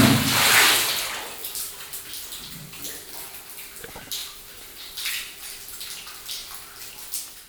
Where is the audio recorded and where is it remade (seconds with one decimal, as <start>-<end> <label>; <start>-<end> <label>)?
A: 0.0-4.2 recorded; 4.2-5.1 remade; 5.1-6.4 recorded; 6.4-7.5 remade